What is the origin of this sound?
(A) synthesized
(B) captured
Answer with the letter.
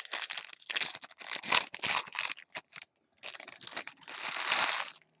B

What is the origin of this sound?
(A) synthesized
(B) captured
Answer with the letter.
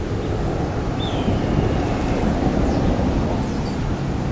B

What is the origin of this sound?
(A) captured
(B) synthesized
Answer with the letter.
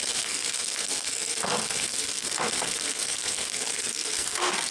B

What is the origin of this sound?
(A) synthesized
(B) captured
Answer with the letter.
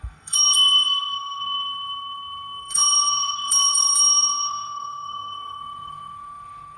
A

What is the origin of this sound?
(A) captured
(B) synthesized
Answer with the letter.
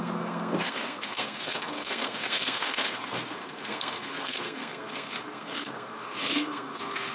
B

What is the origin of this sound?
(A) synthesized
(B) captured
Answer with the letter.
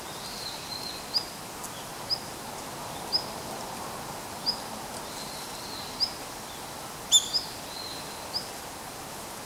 B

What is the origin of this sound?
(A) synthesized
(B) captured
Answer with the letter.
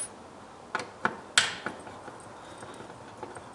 B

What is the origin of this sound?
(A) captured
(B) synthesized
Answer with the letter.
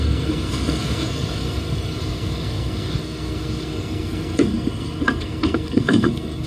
B